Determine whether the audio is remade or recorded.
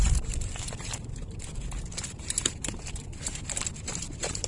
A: remade